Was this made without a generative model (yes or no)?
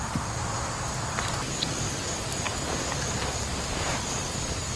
yes